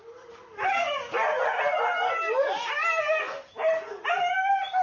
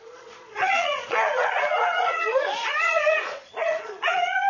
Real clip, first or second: first